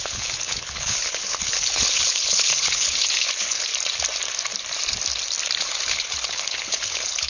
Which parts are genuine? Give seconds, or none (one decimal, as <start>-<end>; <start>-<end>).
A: 3.7-5.6